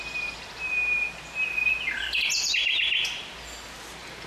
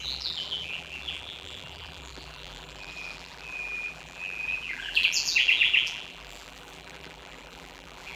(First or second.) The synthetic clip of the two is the second